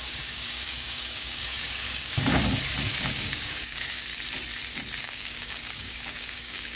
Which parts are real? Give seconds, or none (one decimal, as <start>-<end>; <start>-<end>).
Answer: 2.3-2.9; 4.1-5.0